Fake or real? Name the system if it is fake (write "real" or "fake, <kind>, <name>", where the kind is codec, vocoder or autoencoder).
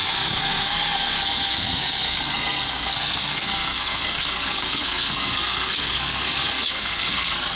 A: fake, codec, SNAC